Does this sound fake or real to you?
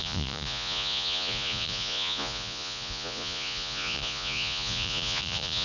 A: fake